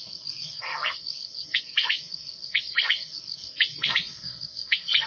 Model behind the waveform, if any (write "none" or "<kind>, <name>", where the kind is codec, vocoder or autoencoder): codec, SNAC